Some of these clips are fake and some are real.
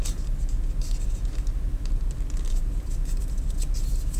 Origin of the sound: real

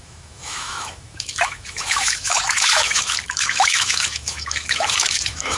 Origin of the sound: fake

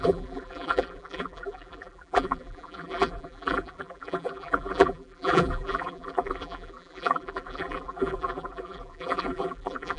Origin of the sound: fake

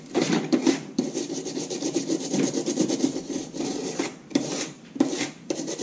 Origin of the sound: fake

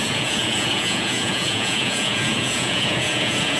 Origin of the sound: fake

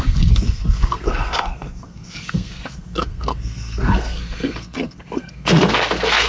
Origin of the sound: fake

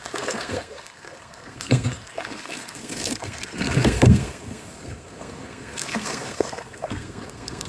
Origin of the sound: fake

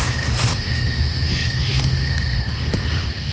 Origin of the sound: fake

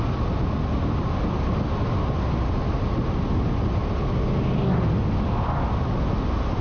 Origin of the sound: real